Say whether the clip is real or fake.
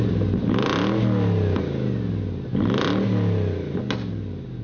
real